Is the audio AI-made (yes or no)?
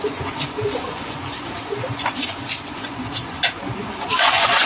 yes